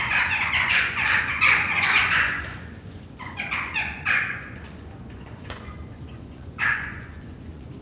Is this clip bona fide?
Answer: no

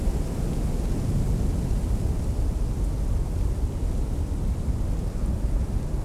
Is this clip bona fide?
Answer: yes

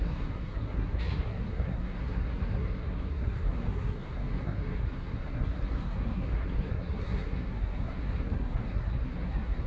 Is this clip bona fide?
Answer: no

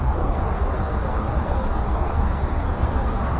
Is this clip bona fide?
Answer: no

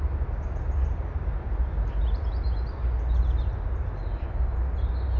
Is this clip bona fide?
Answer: yes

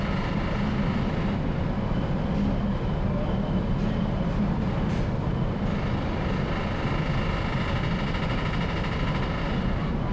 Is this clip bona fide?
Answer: yes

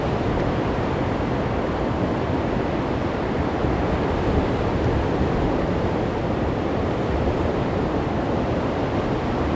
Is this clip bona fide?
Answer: yes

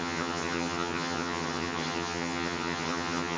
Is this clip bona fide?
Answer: no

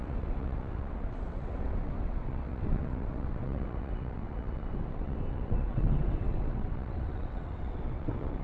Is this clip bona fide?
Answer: no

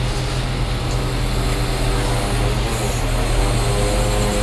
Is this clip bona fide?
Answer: yes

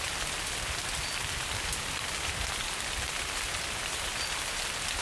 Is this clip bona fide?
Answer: yes